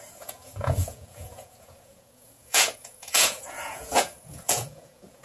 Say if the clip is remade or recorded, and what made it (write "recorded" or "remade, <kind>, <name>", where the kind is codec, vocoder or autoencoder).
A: remade, vocoder, Vocos